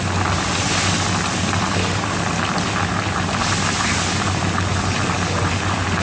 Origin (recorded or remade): recorded